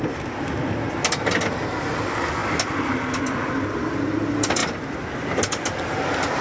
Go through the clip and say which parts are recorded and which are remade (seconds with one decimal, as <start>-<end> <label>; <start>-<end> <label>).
0.0-6.4 recorded